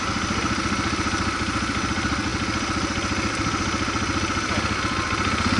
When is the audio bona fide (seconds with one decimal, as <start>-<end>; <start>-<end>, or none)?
0.0-5.6